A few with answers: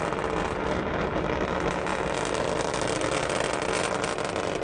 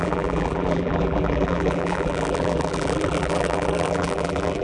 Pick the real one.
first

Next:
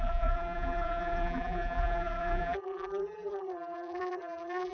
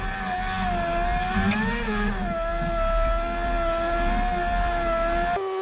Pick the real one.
second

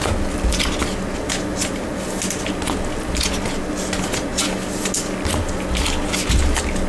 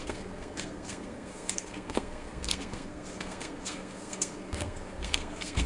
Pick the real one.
first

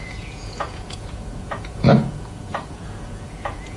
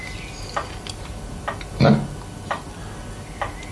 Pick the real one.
second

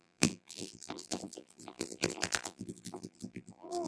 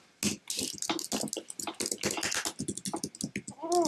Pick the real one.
second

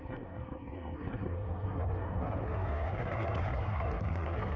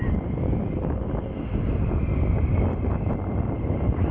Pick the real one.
second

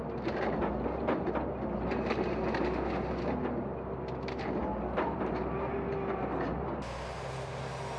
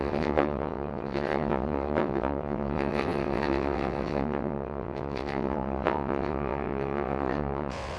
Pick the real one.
first